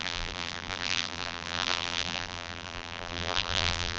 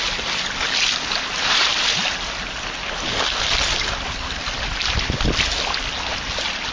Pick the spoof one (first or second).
first